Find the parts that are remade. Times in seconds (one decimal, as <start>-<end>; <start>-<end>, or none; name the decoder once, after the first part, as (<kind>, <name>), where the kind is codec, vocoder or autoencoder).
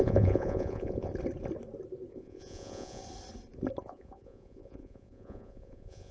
0.0-1.1 (vocoder, Vocos); 2.1-3.0; 3.8-6.1